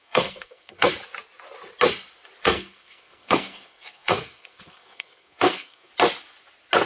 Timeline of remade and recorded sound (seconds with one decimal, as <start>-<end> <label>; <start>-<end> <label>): 0.0-0.9 remade; 0.9-2.4 recorded; 2.4-5.9 remade; 5.9-6.9 recorded